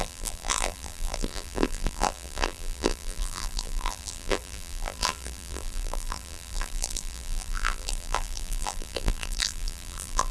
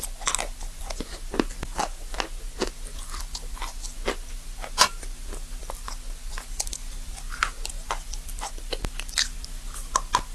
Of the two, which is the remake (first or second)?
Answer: first